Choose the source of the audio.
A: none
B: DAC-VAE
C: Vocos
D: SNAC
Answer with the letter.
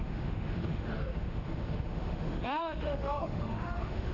B